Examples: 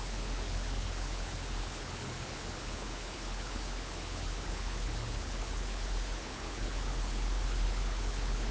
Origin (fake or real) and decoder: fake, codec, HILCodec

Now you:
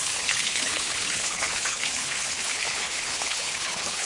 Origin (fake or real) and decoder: fake, codec, HILCodec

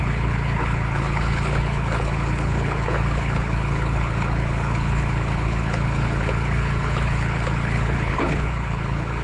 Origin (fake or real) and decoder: fake, codec, HILCodec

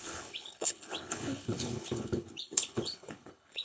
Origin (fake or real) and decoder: fake, codec, HILCodec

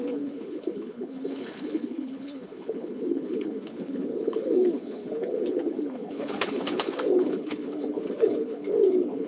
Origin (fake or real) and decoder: fake, codec, HILCodec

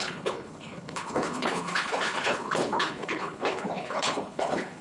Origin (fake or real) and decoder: fake, codec, HILCodec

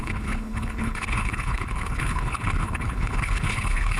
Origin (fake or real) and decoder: fake, codec, HILCodec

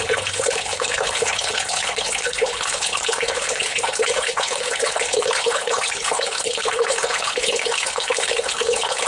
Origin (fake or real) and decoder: fake, codec, HILCodec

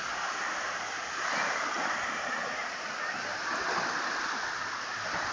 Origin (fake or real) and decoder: real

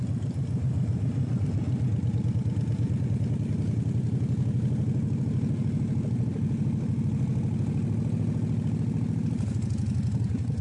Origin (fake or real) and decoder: real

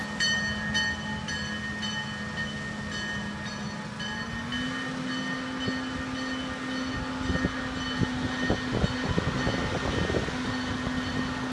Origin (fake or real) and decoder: real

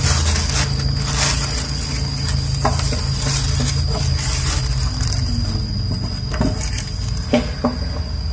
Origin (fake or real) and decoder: real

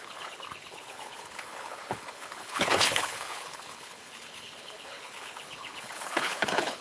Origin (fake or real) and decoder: fake, codec, HILCodec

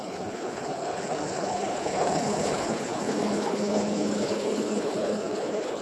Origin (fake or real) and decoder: fake, codec, HILCodec